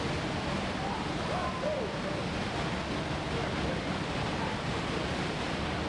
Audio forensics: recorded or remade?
recorded